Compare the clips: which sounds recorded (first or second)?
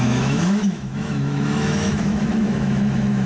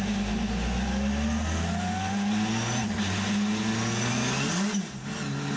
second